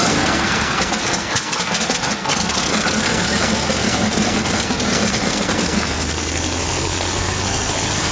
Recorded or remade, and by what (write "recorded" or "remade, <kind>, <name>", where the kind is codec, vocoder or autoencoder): remade, codec, SNAC